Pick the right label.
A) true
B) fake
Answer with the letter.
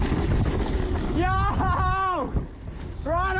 A